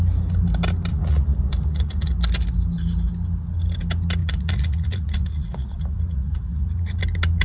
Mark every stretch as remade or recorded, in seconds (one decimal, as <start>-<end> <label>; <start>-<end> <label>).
0.0-0.9 recorded; 0.9-2.1 remade; 2.1-4.2 recorded; 4.2-7.0 remade; 7.0-7.4 recorded

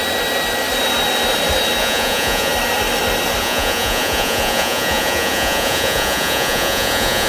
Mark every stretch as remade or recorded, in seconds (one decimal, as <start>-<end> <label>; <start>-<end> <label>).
0.0-1.8 recorded; 1.8-2.5 remade; 2.5-3.4 recorded; 3.4-7.3 remade

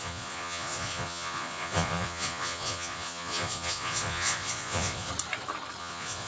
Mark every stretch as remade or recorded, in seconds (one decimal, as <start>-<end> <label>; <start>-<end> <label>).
0.0-5.1 remade; 5.1-5.8 recorded; 5.8-6.3 remade